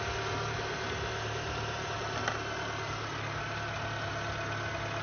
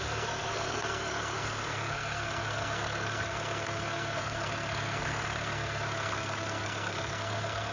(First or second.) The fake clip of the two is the second